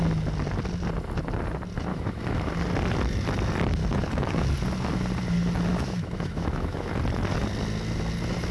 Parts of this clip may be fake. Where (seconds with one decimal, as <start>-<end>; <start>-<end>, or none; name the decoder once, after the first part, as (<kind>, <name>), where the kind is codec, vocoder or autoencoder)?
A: 1.9-2.5 (autoencoder, DAC-VAE); 3.8-4.5; 5.7-6.9